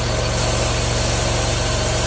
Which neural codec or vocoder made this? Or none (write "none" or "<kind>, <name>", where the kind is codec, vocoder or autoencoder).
none